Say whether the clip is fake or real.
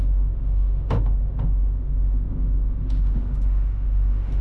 fake